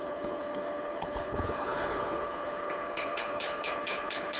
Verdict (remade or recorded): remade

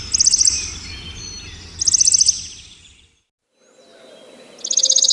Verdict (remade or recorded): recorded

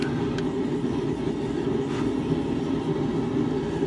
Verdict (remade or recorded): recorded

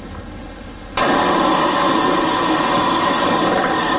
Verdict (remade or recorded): recorded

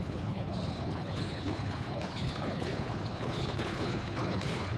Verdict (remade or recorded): remade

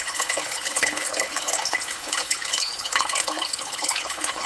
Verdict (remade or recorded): remade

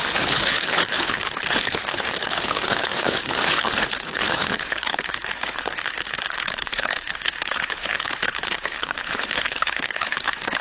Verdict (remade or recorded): remade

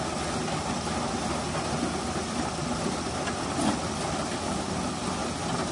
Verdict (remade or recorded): recorded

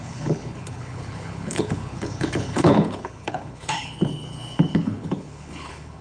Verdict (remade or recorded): remade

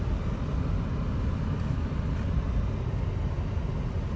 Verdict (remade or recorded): recorded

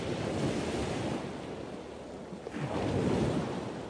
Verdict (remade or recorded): recorded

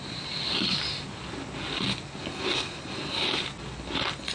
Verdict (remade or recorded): recorded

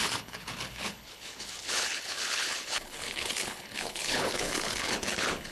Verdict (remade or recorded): remade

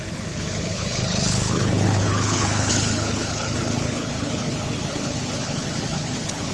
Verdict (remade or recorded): remade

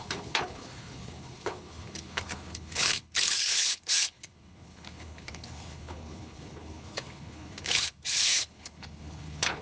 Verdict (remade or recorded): remade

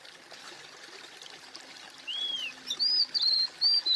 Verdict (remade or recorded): recorded